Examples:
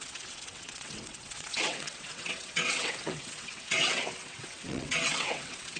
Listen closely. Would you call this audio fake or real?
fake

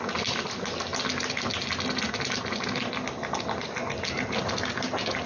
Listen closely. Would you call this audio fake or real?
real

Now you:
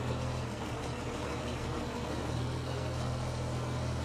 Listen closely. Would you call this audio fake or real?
fake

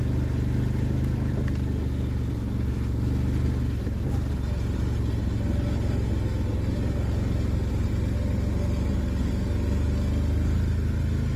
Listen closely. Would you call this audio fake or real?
real